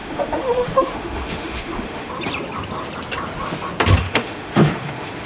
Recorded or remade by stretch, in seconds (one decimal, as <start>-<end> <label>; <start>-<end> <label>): 0.0-2.1 remade; 2.1-4.0 recorded; 4.0-5.3 remade